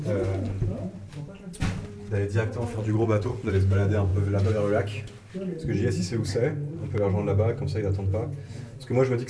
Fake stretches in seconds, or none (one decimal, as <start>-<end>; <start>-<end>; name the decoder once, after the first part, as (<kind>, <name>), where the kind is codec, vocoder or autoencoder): 2.7-3.5 (vocoder, WaveNeXt)